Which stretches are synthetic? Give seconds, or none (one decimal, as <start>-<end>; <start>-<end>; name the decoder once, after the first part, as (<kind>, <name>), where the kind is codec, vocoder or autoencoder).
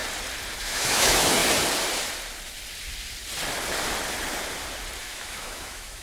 0.6-1.4 (autoencoder, DAC-VAE); 5.0-6.0